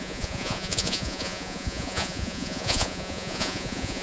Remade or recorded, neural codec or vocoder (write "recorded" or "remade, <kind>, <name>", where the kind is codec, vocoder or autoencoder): remade, vocoder, Vocos